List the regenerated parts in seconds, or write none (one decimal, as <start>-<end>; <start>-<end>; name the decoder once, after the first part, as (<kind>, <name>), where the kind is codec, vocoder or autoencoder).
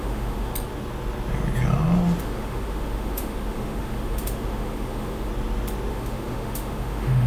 0.0-0.5 (autoencoder, DAC-VAE); 2.2-5.3; 5.9-7.3